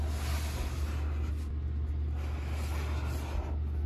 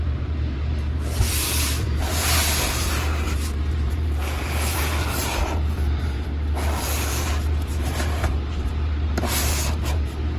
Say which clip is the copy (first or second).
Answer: second